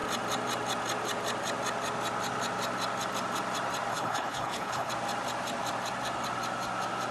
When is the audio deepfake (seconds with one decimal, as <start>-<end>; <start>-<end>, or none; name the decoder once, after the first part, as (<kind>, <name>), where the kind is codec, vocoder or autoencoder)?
3.9-4.9 (codec, HILCodec)